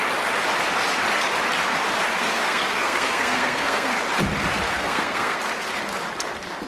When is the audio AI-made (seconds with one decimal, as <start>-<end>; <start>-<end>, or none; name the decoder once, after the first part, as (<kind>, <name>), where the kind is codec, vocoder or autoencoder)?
2.2-4.0 (codec, SNAC); 4.7-5.4